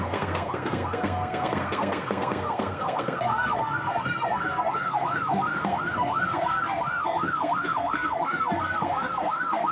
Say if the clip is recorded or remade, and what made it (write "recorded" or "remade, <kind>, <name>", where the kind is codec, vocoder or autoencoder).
remade, codec, SNAC